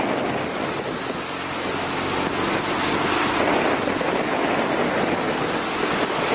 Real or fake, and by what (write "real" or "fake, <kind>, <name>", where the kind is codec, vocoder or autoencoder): real